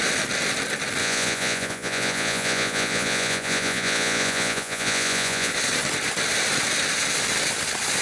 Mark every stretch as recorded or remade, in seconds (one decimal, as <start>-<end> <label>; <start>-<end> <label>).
0.0-1.0 recorded; 1.0-5.5 remade; 5.5-8.0 recorded